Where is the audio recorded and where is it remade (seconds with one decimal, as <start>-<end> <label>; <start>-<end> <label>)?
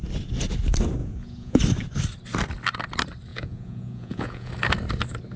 0.0-1.0 recorded; 1.0-1.6 remade; 1.6-3.3 recorded; 3.3-4.5 remade; 4.5-5.4 recorded